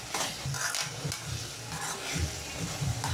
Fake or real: real